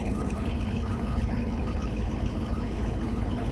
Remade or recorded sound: remade